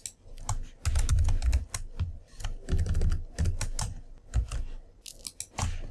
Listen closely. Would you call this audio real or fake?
real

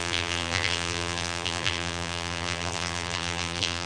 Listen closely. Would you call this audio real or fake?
fake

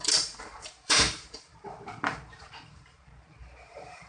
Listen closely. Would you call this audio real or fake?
fake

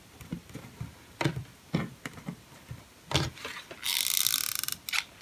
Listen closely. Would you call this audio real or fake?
real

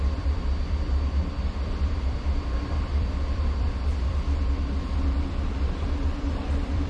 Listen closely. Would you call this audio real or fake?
fake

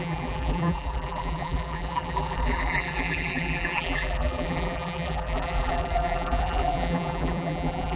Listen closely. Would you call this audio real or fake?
fake